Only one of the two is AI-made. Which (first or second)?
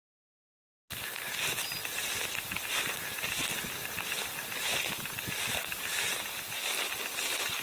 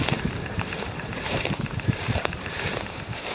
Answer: second